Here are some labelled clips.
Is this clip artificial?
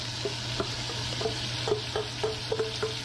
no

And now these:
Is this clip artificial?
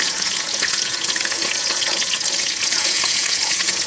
yes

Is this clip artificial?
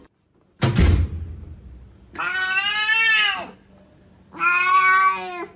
no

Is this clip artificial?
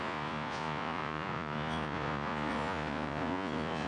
yes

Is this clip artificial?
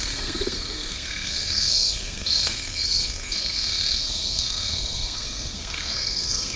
yes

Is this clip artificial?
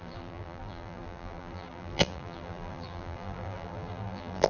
yes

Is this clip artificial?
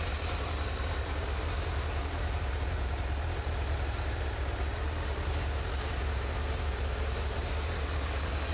no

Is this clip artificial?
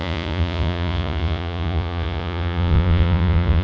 yes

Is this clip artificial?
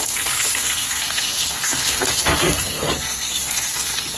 yes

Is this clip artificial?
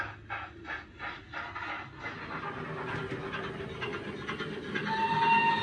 no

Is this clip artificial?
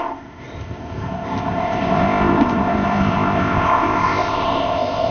yes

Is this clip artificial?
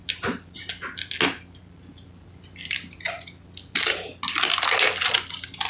no